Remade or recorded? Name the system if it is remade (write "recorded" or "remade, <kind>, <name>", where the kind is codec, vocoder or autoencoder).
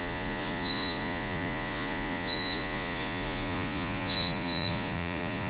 remade, vocoder, Vocos